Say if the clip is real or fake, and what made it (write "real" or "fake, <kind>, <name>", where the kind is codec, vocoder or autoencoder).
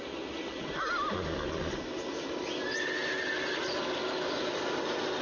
real